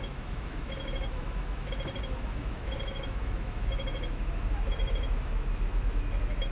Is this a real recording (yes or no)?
no